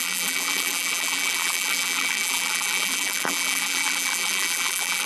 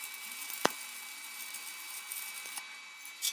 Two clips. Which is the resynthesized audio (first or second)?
first